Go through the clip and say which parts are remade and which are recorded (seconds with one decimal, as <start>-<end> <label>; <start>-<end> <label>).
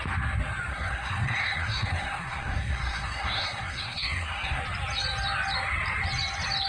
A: 0.0-0.7 recorded; 0.7-4.6 remade; 4.6-6.7 recorded